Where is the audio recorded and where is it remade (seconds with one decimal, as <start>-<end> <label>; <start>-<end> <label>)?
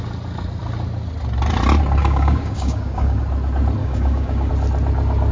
0.0-2.0 recorded; 2.0-3.2 remade; 3.2-3.8 recorded; 3.8-4.5 remade; 4.5-5.3 recorded